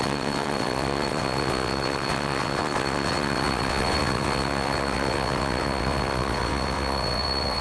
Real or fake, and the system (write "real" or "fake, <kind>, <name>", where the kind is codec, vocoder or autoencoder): fake, vocoder, WaveNeXt